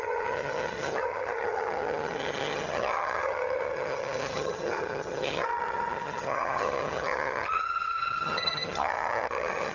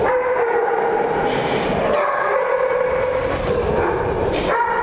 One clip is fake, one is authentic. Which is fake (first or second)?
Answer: first